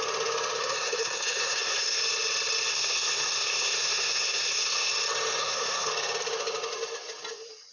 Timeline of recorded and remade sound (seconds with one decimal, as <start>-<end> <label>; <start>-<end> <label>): 0.0-0.6 recorded; 0.6-2.0 remade; 2.0-2.7 recorded; 2.7-4.9 remade; 4.9-5.4 recorded; 5.4-5.9 remade; 5.9-7.7 recorded